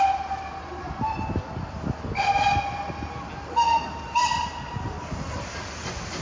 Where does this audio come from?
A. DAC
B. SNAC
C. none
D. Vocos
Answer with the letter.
C